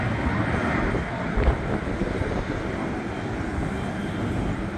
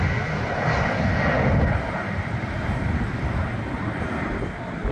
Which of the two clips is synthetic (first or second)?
second